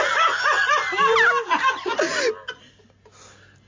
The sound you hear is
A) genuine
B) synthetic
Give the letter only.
A